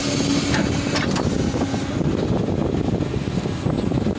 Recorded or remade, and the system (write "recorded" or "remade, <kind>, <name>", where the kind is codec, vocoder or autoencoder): recorded